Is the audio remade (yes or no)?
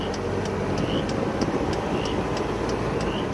no